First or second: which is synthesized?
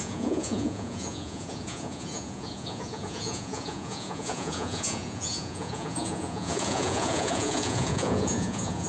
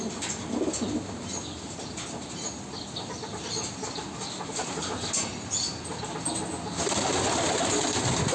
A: first